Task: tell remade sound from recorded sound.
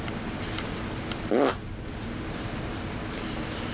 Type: recorded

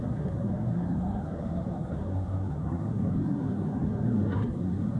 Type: remade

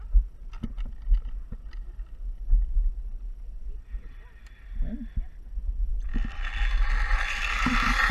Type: recorded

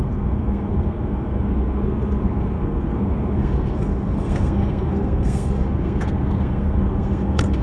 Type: remade